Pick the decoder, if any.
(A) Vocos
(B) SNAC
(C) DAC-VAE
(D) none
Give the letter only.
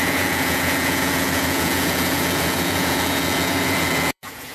A